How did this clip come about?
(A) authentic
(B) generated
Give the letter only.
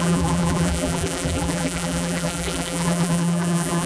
B